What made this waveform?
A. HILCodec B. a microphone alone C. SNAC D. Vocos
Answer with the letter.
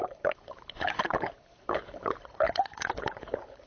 A